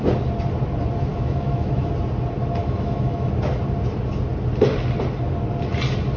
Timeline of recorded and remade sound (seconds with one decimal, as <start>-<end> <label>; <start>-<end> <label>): 0.0-1.1 recorded; 1.1-1.9 remade; 1.9-2.6 recorded; 2.6-3.3 remade; 3.3-6.2 recorded